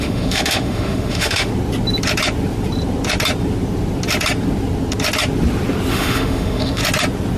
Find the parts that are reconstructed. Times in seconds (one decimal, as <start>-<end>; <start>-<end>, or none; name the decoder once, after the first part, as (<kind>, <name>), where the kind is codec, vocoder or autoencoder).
0.0-1.5 (autoencoder, DAC-VAE); 5.9-6.8